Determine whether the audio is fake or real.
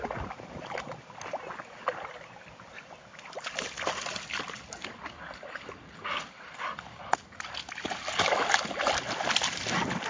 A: real